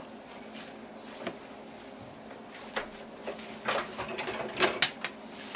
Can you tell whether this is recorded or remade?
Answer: recorded